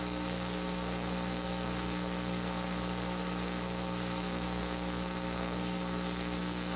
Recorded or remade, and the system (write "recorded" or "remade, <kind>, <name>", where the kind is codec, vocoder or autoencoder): remade, codec, SNAC